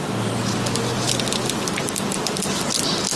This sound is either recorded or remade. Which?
recorded